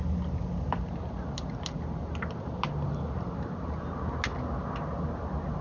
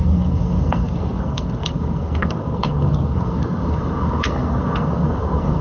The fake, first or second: second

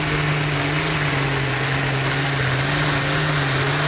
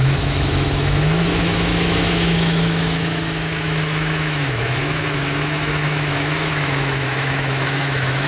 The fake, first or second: second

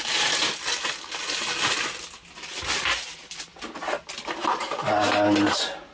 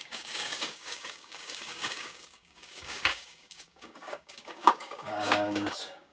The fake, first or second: second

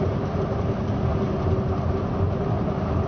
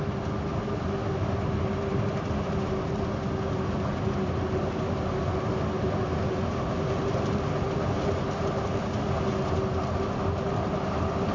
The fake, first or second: first